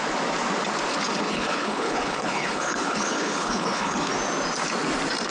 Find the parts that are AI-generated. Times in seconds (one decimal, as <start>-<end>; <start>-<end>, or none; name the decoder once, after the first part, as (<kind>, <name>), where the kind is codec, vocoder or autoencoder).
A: 0.9-4.1 (codec, HILCodec)